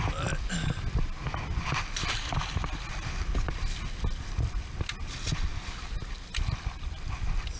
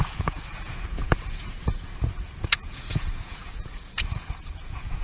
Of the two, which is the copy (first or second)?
second